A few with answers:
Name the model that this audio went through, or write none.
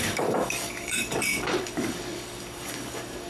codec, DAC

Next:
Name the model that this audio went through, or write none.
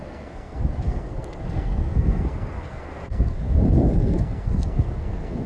codec, SNAC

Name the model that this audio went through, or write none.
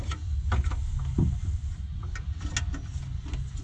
none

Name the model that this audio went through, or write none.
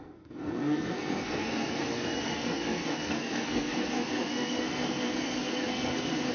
codec, SNAC